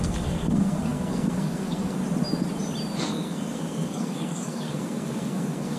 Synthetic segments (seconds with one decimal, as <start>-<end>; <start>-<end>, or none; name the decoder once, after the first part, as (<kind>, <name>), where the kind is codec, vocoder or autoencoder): 0.0-2.0 (codec, SNAC); 3.0-5.8